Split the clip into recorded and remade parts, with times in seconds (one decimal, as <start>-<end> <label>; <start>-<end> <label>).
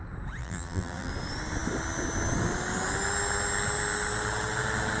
0.0-0.4 recorded; 0.4-1.1 remade; 1.1-5.0 recorded